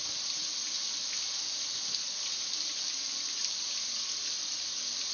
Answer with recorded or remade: recorded